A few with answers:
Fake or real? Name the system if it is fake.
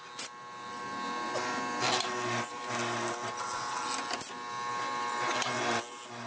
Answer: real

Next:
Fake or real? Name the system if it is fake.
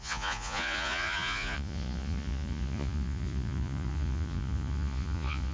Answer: fake, vocoder, Vocos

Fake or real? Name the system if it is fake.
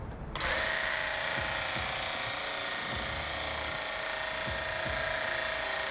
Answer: real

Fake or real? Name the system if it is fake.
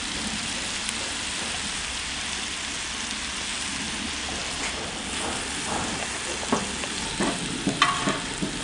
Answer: real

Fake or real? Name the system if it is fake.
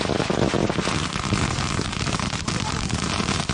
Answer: real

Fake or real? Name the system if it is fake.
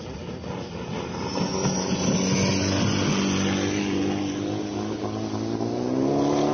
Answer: real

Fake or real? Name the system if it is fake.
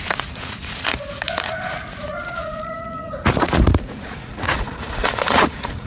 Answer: fake, vocoder, Vocos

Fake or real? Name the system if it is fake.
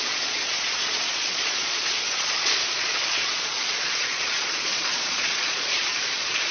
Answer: fake, vocoder, Vocos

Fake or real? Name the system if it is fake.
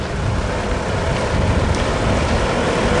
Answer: real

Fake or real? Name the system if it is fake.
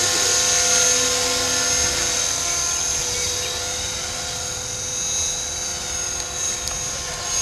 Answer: real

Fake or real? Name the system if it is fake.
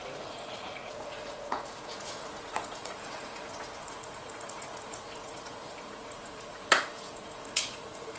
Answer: fake, vocoder, Vocos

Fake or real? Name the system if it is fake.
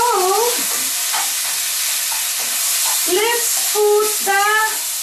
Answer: real